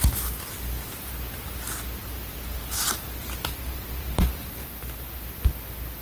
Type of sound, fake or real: real